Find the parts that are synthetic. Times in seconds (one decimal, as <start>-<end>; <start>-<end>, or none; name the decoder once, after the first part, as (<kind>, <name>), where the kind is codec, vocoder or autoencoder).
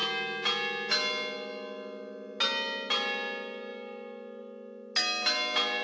none